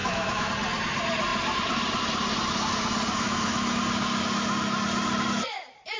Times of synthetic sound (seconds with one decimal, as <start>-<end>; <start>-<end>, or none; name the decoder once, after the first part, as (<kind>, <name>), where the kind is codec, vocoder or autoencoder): 0.0-0.5 (autoencoder, DAC-VAE); 3.1-3.8